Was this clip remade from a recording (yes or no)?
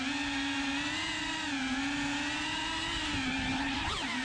no